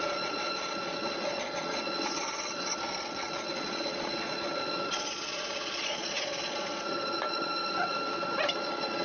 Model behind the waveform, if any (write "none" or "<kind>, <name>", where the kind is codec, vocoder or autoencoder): vocoder, Vocos